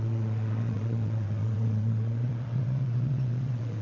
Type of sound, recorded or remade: remade